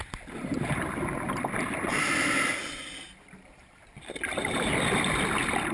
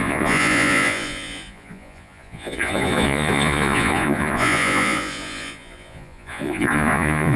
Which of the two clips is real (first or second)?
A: first